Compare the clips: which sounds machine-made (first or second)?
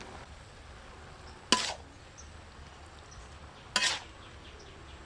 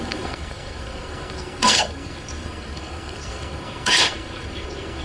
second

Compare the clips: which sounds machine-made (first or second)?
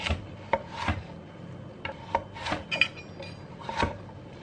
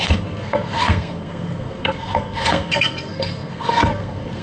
second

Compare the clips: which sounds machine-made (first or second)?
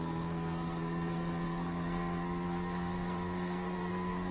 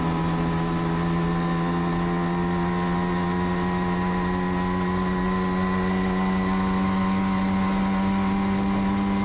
first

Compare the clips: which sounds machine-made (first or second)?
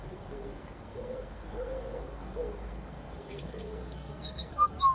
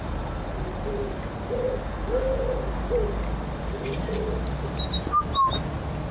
first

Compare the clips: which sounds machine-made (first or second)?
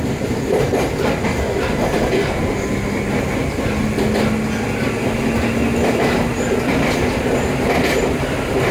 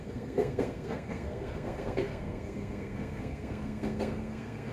second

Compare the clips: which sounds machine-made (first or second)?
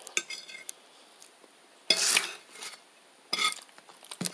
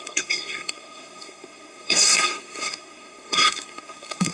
second